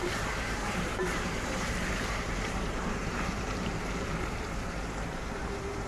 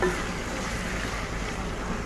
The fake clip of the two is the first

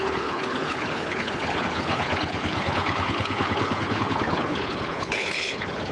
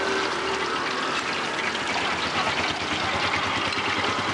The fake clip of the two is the first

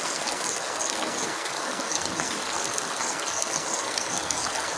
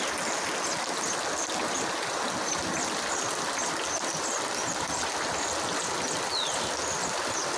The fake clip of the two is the first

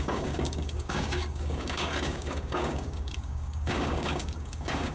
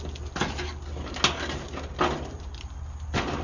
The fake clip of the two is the first